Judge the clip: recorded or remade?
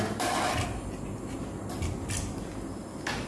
recorded